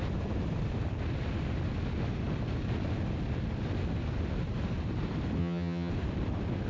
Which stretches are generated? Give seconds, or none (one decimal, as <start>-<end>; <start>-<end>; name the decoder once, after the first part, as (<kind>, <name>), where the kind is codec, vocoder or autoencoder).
5.4-5.9 (vocoder, HiFi-GAN)